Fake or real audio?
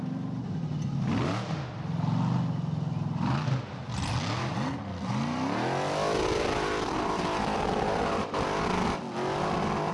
real